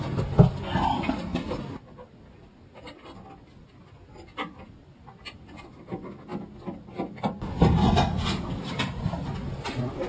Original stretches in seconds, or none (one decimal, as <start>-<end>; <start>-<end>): 0.0-10.1